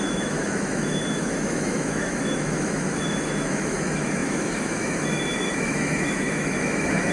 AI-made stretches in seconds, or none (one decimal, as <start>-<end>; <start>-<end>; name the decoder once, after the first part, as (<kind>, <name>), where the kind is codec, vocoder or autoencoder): 0.0-7.1 (autoencoder, DAC-VAE)